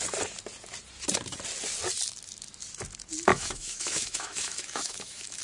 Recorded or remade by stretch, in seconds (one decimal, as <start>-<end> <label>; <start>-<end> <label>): 0.0-3.3 recorded; 3.3-5.4 remade